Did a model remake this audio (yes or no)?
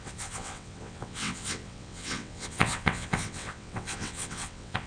yes